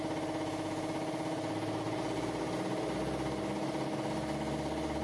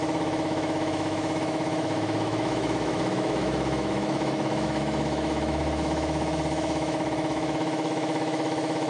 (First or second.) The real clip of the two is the first